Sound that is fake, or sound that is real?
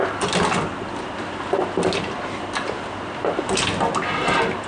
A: real